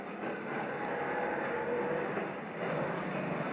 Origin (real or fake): fake